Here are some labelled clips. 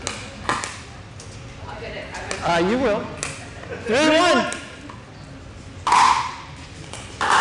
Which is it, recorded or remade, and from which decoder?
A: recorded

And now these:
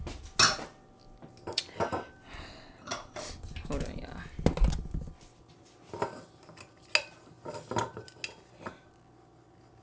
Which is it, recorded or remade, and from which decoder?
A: recorded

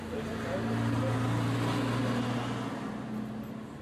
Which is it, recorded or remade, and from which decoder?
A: recorded